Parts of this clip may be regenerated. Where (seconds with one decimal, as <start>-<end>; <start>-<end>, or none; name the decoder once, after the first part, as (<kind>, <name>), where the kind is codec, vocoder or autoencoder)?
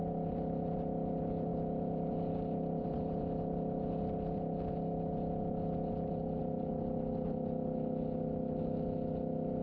none